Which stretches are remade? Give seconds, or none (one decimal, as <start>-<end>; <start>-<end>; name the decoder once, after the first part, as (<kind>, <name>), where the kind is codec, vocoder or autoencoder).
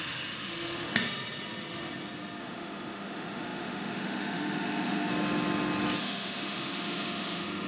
0.0-0.9 (autoencoder, DAC-VAE); 2.4-5.1; 6.0-7.7